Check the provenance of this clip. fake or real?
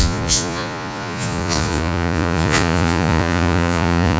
fake